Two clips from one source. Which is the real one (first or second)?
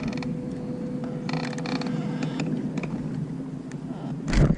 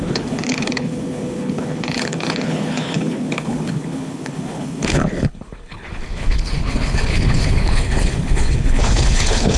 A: first